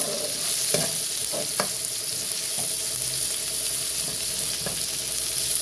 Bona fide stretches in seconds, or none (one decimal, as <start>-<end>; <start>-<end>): 0.0-5.6